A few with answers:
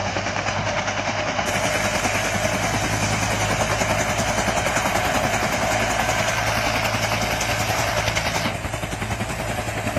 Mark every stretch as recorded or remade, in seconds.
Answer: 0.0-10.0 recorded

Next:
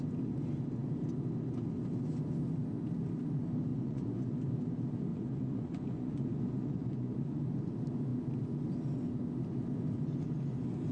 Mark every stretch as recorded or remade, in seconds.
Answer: 0.0-3.7 recorded; 3.7-4.4 remade; 4.4-5.1 recorded; 5.1-7.4 remade; 7.4-10.9 recorded